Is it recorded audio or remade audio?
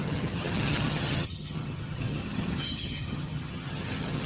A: remade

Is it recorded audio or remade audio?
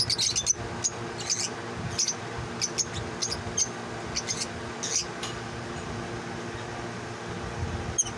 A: recorded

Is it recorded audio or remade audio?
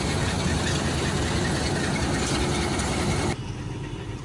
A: recorded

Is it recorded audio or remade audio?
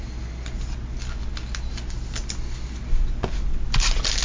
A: recorded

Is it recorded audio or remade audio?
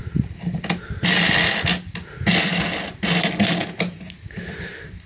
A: recorded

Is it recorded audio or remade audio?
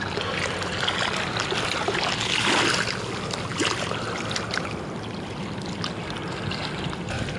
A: recorded